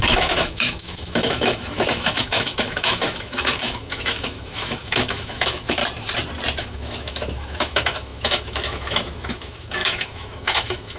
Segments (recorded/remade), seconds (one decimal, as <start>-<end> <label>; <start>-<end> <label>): 0.0-5.8 remade; 5.8-6.6 recorded; 6.6-11.0 remade